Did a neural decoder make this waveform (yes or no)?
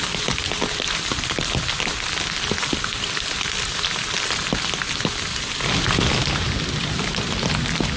no